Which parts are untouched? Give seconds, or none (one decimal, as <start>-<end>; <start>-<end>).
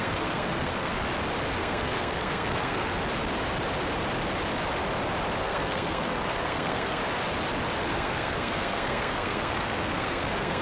0.9-1.6; 2.9-5.4; 7.0-7.9